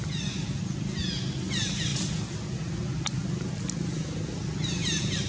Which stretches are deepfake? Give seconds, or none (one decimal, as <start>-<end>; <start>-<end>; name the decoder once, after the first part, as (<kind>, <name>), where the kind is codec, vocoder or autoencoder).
none